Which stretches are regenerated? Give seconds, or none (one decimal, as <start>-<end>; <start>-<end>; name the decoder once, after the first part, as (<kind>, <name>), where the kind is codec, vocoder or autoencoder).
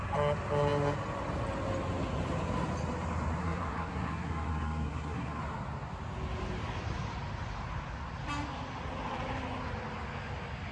3.4-5.4 (codec, SNAC)